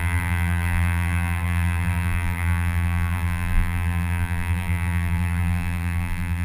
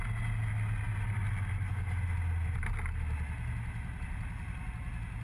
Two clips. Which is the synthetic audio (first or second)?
first